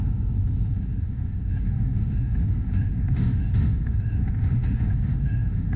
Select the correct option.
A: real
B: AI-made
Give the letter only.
B